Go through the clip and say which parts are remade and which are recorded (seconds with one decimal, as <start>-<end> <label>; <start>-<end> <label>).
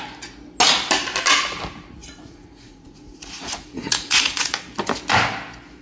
0.0-2.0 recorded; 2.0-4.7 remade; 4.7-5.8 recorded